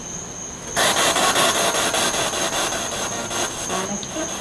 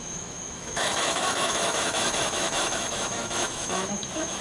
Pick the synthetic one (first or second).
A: second